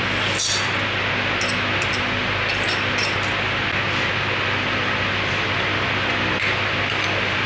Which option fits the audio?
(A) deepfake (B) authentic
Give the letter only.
B